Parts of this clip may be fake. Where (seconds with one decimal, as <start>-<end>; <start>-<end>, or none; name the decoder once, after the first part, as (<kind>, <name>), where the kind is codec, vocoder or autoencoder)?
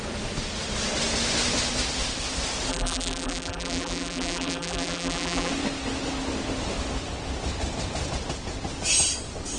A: 2.7-5.5 (vocoder, BigVGAN v2)